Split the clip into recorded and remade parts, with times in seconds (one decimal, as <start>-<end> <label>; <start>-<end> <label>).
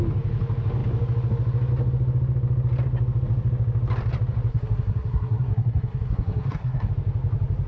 0.0-4.5 recorded; 4.5-6.9 remade; 6.9-7.7 recorded